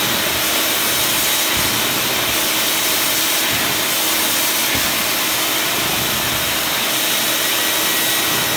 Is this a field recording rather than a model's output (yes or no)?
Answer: yes